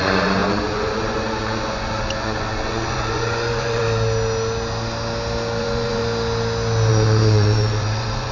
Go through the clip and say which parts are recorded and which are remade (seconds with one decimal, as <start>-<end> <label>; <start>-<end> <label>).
0.0-3.8 remade; 3.8-5.6 recorded; 5.6-6.0 remade; 6.0-6.9 recorded; 6.9-8.3 remade